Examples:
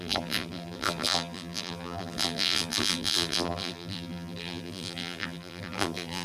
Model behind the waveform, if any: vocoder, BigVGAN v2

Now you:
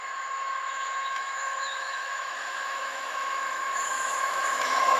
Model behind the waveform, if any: autoencoder, DAC-VAE